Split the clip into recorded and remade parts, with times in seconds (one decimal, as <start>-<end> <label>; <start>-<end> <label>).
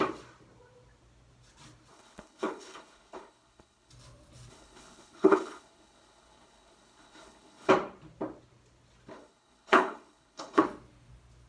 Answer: 0.0-1.9 recorded; 1.9-3.9 remade; 3.9-4.5 recorded; 4.5-7.7 remade; 7.7-9.1 recorded; 9.1-10.6 remade; 10.6-11.5 recorded